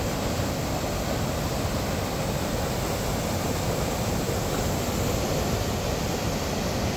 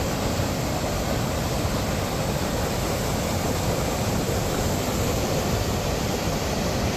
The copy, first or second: second